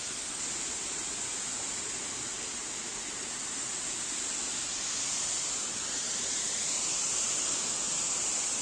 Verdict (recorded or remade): recorded